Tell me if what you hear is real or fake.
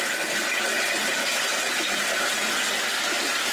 real